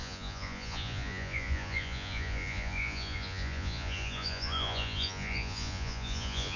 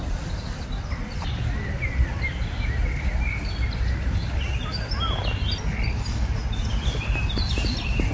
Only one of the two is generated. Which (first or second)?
first